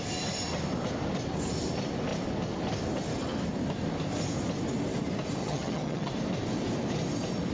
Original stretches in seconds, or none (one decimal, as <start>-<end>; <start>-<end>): 0.0-5.4; 6.1-7.5